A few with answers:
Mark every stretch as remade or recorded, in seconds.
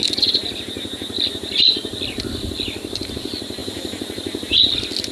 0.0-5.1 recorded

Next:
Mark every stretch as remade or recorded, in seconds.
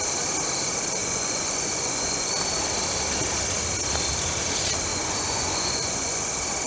0.0-1.0 recorded; 1.0-2.3 remade; 2.3-4.9 recorded; 4.9-6.3 remade; 6.3-6.7 recorded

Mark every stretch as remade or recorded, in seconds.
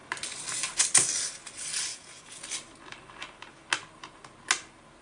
0.0-1.9 recorded; 1.9-2.4 remade; 2.4-5.0 recorded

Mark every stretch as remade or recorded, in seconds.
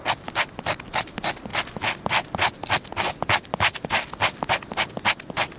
0.0-5.6 recorded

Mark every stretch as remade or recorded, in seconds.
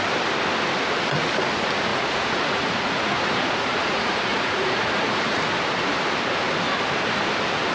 0.0-1.9 recorded; 1.9-5.5 remade; 5.5-7.7 recorded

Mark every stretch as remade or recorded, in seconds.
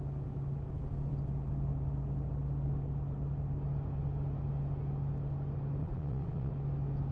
0.0-5.8 recorded; 5.8-6.5 remade; 6.5-7.1 recorded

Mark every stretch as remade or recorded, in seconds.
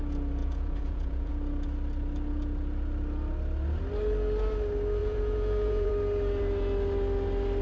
0.0-0.4 recorded; 0.4-1.3 remade; 1.3-5.0 recorded; 5.0-5.9 remade; 5.9-7.6 recorded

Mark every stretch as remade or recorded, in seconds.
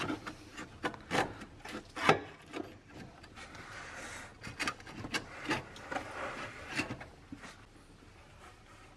0.0-9.0 recorded